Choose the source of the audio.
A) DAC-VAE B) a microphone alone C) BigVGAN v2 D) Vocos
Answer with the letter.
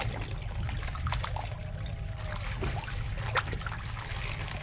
B